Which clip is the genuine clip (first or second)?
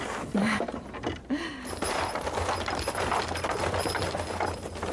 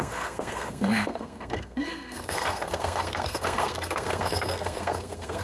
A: first